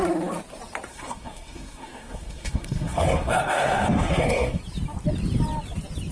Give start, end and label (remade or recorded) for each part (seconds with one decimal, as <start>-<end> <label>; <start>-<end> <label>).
0.0-0.9 recorded; 0.9-4.6 remade; 4.6-6.1 recorded